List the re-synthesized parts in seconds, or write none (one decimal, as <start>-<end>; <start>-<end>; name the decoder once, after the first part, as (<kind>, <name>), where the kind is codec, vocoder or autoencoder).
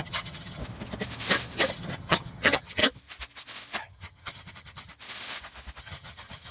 0.0-0.6 (vocoder, HiFi-GAN); 1.7-2.8; 3.8-4.9; 5.8-6.5